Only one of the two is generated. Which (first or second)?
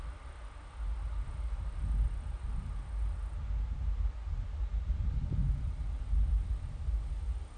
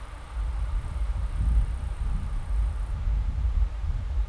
second